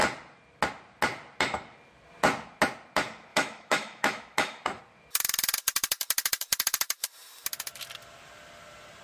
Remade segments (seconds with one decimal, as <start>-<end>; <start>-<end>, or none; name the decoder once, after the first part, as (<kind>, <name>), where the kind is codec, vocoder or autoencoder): 3.3-4.8 (autoencoder, DAC-VAE)